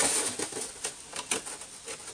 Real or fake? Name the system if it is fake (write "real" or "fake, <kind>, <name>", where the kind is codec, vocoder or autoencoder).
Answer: real